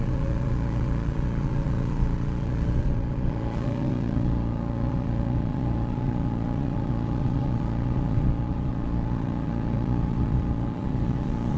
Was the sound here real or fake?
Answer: fake